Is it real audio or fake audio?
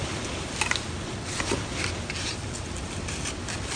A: real